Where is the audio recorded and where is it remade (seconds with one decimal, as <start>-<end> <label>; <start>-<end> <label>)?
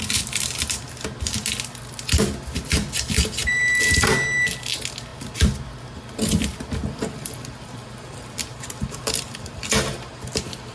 0.0-6.8 recorded; 6.8-10.7 remade